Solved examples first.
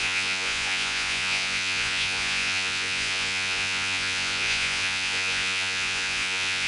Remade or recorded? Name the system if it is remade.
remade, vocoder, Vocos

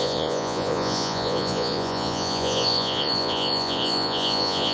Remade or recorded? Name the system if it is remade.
remade, vocoder, Vocos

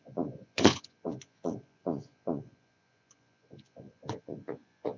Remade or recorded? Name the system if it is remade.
remade, vocoder, Vocos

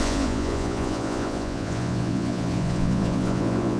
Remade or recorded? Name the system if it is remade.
remade, vocoder, Vocos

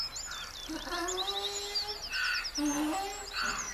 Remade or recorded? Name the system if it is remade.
recorded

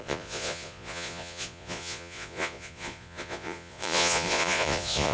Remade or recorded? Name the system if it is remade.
remade, vocoder, Vocos